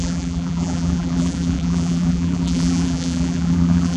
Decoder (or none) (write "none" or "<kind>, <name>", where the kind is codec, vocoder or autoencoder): vocoder, BigVGAN v2